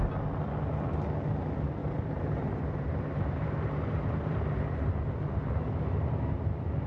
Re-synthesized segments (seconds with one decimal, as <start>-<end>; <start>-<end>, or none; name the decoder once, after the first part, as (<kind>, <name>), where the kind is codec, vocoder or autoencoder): 1.8-4.9 (vocoder, BigVGAN v2)

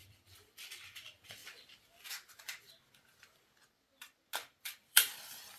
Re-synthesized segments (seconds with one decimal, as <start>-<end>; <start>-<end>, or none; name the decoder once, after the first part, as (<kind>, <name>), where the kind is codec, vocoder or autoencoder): 0.0-1.4 (vocoder, BigVGAN v2); 4.6-5.6

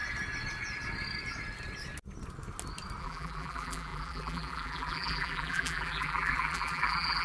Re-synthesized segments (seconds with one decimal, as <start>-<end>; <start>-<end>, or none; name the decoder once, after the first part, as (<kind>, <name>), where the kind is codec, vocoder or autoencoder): 3.0-7.2 (vocoder, BigVGAN v2)

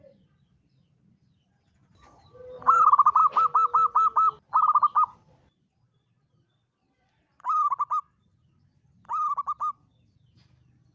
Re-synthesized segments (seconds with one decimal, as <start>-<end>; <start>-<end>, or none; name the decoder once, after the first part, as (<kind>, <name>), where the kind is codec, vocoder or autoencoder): 0.0-3.2 (vocoder, BigVGAN v2); 8.2-8.7; 10.0-10.9